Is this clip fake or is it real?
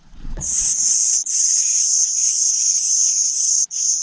fake